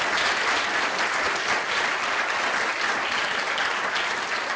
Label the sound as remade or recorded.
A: recorded